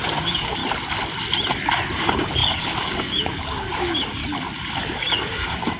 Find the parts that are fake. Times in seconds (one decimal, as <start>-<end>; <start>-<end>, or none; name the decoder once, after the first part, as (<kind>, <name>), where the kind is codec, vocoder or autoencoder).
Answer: 0.0-0.6 (codec, DAC); 1.9-4.2; 4.8-5.8